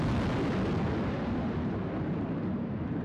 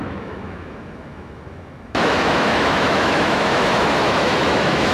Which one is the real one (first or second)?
first